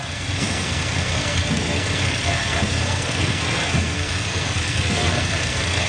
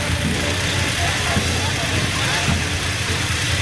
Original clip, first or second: second